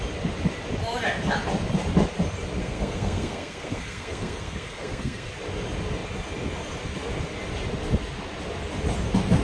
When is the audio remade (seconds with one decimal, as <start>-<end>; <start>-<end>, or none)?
2.6-5.3